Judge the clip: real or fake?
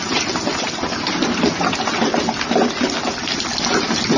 real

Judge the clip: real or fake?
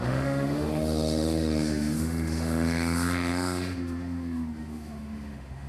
fake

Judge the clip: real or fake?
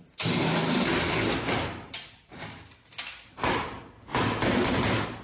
real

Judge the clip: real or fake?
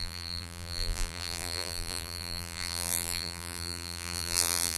fake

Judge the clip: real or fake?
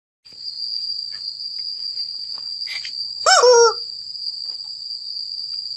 real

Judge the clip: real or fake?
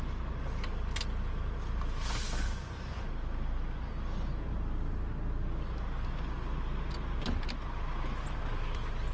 real